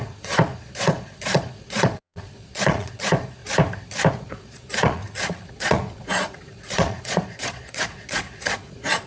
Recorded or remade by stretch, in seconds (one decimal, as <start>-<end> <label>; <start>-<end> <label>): 0.0-3.4 remade; 3.4-4.1 recorded; 4.1-5.0 remade; 5.0-5.5 recorded; 5.5-9.1 remade